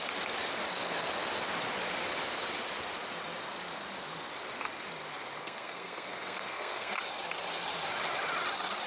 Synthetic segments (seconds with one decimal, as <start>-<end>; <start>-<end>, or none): 5.4-6.9